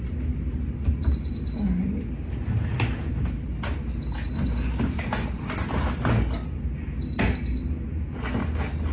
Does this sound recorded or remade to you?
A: recorded